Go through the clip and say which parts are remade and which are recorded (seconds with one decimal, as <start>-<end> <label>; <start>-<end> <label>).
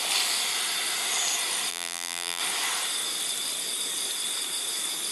0.0-1.7 recorded; 1.7-2.4 remade; 2.4-5.1 recorded